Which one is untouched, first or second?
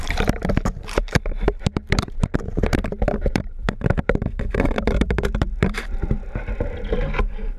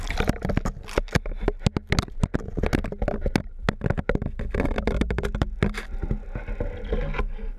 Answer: second